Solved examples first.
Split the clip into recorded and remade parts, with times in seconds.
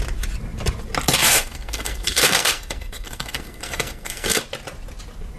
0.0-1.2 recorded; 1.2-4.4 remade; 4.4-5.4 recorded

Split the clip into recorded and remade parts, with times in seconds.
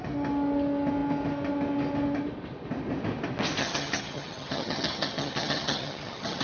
0.0-3.6 recorded; 3.6-6.4 remade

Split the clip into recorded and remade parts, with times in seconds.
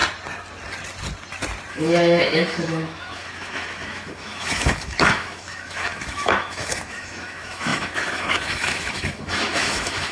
0.0-1.7 recorded; 1.7-10.1 remade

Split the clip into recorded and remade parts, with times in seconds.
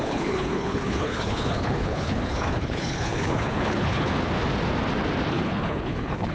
0.0-4.1 remade; 4.1-5.3 recorded; 5.3-6.3 remade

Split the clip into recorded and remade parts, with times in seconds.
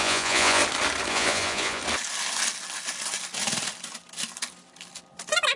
0.0-0.6 remade; 0.6-1.1 recorded; 1.1-1.8 remade; 1.8-5.6 recorded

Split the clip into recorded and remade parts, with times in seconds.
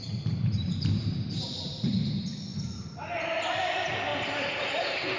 0.0-2.5 remade; 2.5-3.6 recorded; 3.6-4.1 remade; 4.1-5.2 recorded